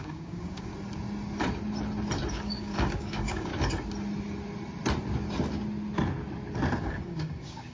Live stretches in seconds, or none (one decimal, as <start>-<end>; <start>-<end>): 0.7-2.3; 3.5-6.7